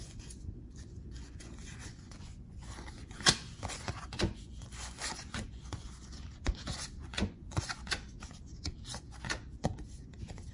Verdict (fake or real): fake